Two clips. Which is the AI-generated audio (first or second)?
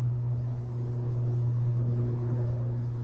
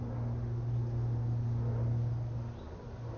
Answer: first